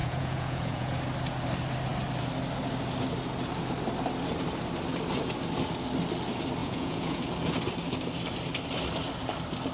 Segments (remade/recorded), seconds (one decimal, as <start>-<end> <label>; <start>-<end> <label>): 0.0-0.9 remade; 0.9-6.6 recorded; 6.6-7.2 remade; 7.2-9.7 recorded